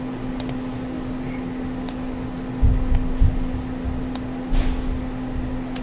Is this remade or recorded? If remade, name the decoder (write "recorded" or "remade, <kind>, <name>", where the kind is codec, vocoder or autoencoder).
recorded